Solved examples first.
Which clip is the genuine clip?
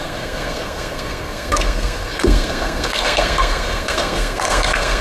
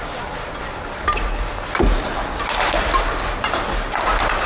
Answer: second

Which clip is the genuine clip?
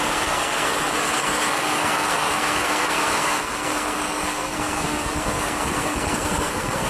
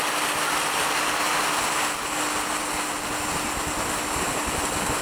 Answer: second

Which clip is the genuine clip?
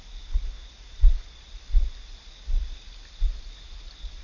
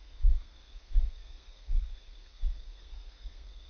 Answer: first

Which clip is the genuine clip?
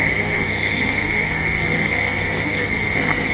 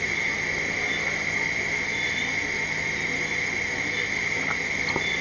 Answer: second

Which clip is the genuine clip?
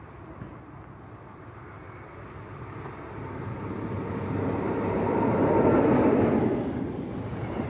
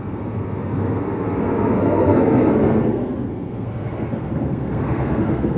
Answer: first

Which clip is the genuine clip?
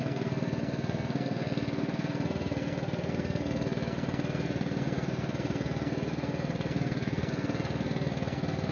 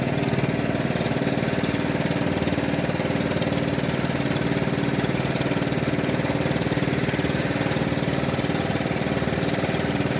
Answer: second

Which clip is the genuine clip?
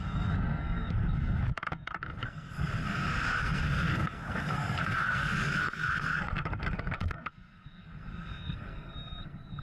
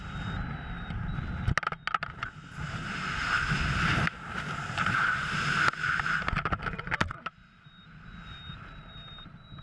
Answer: second